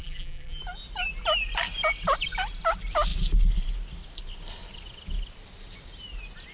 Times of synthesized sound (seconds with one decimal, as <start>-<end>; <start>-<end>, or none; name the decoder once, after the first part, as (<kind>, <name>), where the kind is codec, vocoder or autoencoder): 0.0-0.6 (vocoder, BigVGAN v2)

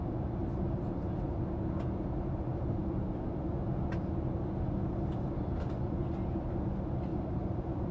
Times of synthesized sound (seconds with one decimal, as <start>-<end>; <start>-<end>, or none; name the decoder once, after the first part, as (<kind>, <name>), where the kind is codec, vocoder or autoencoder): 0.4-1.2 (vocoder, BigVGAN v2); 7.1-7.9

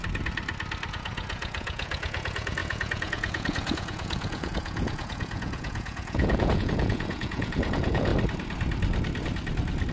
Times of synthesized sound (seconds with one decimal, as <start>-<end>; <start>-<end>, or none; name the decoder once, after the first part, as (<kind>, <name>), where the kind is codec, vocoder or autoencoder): 0.9-8.1 (vocoder, Vocos)

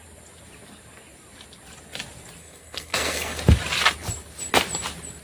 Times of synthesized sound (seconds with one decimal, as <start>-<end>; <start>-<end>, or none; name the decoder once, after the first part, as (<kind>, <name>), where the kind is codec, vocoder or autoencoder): 2.4-3.4 (codec, SNAC)